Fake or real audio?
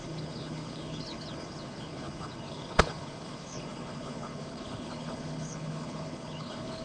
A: fake